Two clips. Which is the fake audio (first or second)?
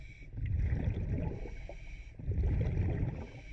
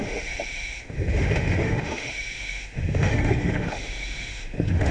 second